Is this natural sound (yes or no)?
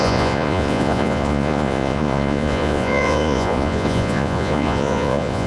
no